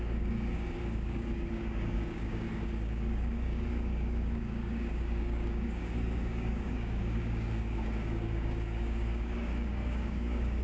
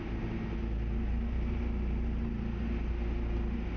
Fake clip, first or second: first